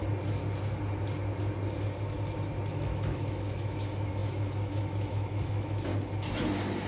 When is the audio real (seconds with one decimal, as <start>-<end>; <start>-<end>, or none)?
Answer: 0.0-2.7; 5.9-6.9